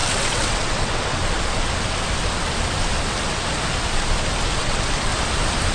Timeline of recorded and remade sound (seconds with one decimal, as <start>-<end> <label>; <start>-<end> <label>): 0.0-1.2 remade; 1.2-4.6 recorded; 4.6-5.1 remade; 5.1-5.7 recorded